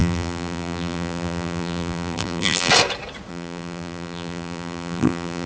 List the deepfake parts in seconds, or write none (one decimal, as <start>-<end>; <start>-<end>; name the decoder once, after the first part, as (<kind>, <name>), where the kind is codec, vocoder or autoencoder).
0.0-2.7 (vocoder, BigVGAN v2); 3.3-5.5